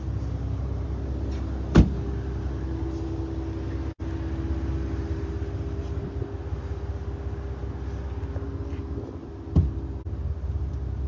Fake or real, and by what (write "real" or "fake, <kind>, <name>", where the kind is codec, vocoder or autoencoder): real